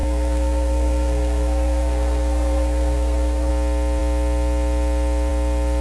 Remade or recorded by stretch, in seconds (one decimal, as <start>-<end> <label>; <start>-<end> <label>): 0.0-3.5 remade; 3.5-5.8 recorded

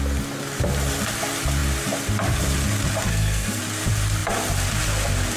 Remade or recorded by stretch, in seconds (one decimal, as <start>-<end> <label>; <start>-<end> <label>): 0.0-3.1 recorded; 3.1-3.6 remade; 3.6-5.4 recorded

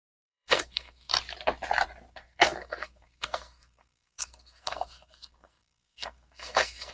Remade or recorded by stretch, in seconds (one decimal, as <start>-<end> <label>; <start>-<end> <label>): 0.0-1.1 remade; 1.1-2.1 recorded; 2.1-6.9 remade

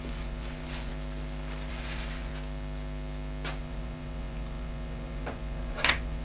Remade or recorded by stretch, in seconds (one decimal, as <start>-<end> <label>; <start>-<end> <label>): 0.0-0.9 remade; 0.9-1.7 recorded; 1.7-2.3 remade; 2.3-3.6 recorded; 3.6-6.2 remade

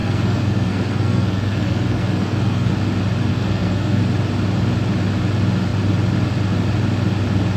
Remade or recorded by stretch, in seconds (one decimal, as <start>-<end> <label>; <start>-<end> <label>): 0.0-2.7 remade; 2.7-3.3 recorded; 3.3-4.0 remade; 4.0-7.6 recorded